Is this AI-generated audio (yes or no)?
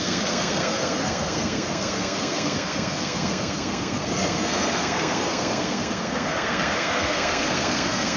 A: yes